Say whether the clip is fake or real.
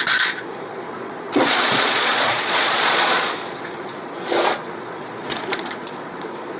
fake